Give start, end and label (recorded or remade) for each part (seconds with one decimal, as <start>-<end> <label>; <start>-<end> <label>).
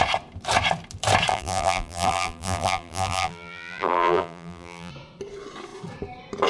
0.0-1.3 recorded; 1.3-4.9 remade; 4.9-6.5 recorded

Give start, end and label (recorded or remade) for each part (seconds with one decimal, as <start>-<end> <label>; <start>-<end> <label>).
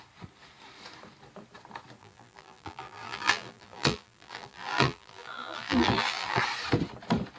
0.0-2.0 recorded; 2.0-6.4 remade; 6.4-7.4 recorded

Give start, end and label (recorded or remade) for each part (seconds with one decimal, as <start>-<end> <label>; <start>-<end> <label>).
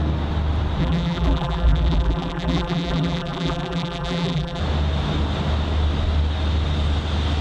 0.0-0.8 recorded; 0.8-4.6 remade; 4.6-7.4 recorded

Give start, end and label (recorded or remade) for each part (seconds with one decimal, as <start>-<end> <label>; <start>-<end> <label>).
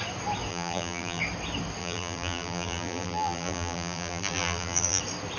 0.0-0.5 recorded; 0.5-1.2 remade; 1.2-1.8 recorded; 1.8-5.0 remade; 5.0-5.4 recorded